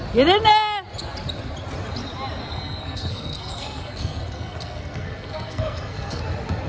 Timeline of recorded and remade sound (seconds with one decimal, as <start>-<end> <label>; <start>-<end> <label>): 0.0-2.4 recorded; 2.4-6.2 remade; 6.2-6.7 recorded